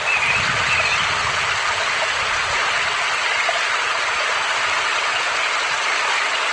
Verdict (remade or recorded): recorded